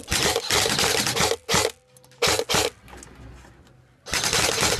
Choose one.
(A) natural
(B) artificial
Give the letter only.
A